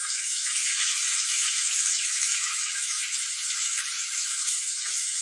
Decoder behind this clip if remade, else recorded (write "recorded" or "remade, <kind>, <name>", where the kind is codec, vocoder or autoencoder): remade, autoencoder, DAC-VAE